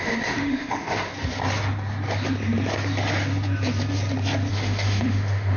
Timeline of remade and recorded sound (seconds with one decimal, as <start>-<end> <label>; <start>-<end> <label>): 0.0-1.1 remade; 1.1-4.5 recorded; 4.5-5.6 remade

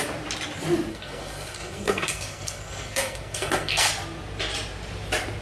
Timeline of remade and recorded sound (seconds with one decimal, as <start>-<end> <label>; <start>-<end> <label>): 0.0-0.9 recorded; 0.9-3.9 remade; 3.9-5.4 recorded

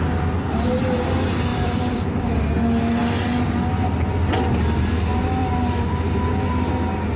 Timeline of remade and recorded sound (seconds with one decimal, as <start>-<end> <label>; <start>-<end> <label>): 0.0-1.5 recorded; 1.5-2.0 remade; 2.0-5.4 recorded; 5.4-6.5 remade; 6.5-7.2 recorded

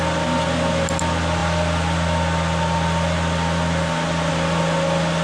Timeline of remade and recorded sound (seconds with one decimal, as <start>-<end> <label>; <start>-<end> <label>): 0.0-5.2 recorded

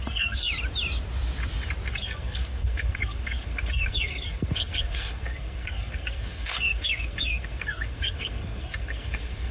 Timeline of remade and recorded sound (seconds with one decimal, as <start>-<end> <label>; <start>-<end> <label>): 0.0-0.5 remade; 0.5-1.9 recorded; 1.9-9.5 remade

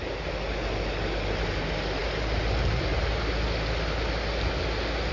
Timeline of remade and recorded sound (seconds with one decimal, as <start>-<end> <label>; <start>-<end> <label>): 0.0-5.1 recorded

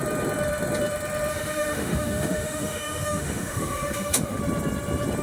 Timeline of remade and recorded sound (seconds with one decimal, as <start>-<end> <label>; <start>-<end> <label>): 0.0-1.3 recorded; 1.3-4.4 remade; 4.4-5.2 recorded